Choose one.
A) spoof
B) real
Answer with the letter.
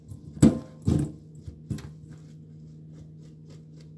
B